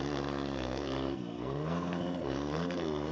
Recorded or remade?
remade